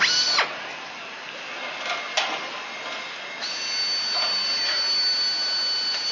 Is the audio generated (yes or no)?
no